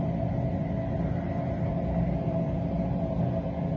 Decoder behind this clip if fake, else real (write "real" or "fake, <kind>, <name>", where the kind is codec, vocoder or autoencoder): real